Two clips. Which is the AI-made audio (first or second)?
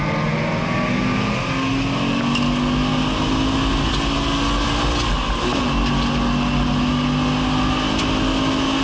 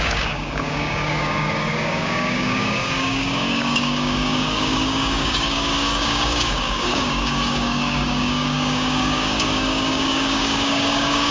second